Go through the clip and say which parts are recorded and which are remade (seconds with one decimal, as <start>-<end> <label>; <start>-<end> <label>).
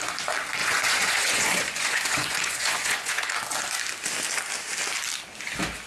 0.0-0.6 recorded; 0.6-3.3 remade; 3.3-5.9 recorded